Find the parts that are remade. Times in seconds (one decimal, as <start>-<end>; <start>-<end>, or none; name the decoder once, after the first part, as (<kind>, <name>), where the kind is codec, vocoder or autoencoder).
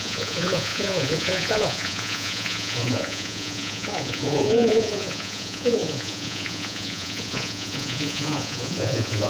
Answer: 0.0-9.3 (vocoder, Vocos)